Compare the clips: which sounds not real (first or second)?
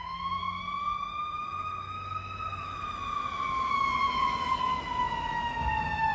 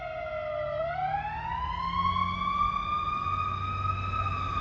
first